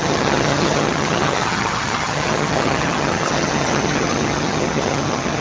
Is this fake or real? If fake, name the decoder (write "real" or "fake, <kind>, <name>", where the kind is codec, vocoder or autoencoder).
fake, vocoder, HiFi-GAN